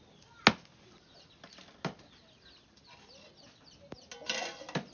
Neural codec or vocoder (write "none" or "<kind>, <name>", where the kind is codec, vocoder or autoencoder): none